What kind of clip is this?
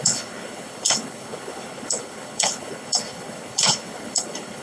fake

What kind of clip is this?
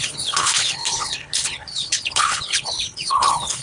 fake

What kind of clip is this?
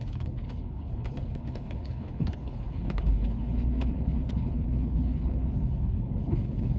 fake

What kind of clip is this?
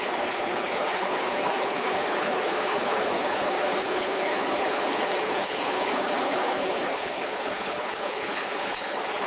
fake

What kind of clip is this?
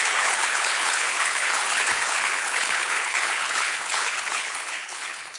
fake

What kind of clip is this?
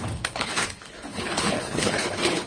fake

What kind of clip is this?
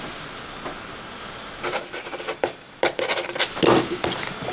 real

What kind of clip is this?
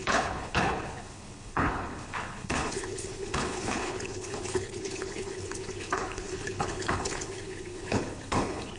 fake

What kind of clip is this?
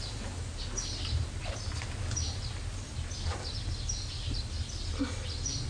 real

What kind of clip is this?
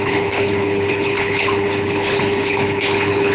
fake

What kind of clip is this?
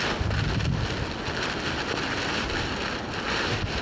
real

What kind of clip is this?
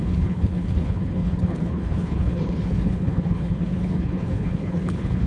fake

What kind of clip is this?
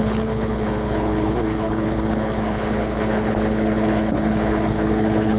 fake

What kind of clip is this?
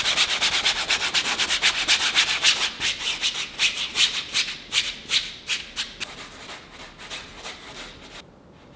real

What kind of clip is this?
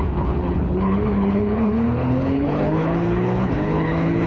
fake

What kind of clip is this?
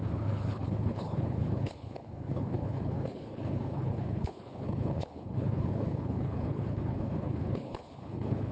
fake